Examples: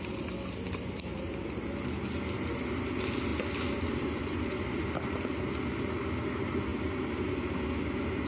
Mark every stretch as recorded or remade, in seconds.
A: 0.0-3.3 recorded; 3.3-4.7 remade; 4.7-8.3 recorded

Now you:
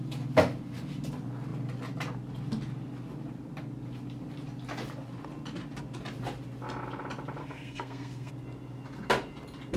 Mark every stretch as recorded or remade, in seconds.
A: 0.0-7.4 recorded; 7.4-8.3 remade; 8.3-9.8 recorded

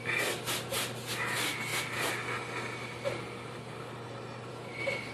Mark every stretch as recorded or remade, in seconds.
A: 0.0-5.1 recorded

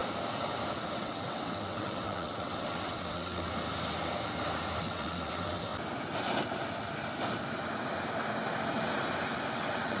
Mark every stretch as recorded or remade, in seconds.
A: 0.0-1.0 recorded; 1.0-3.5 remade; 3.5-4.8 recorded; 4.8-5.7 remade; 5.7-9.5 recorded; 9.5-10.0 remade

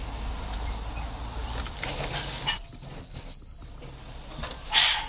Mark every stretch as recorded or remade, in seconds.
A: 0.0-5.1 recorded

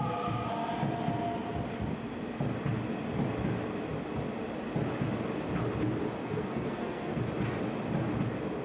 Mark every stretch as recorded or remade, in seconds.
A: 0.0-6.2 recorded; 6.2-7.2 remade; 7.2-8.6 recorded